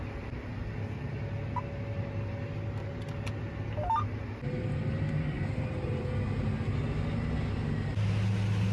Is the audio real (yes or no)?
yes